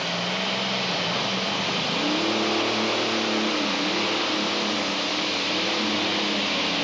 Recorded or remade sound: recorded